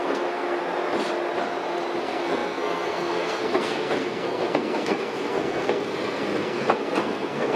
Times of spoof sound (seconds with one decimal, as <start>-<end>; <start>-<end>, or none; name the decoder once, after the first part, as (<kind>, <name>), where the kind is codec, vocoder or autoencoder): 0.0-0.6 (codec, SNAC); 2.0-7.6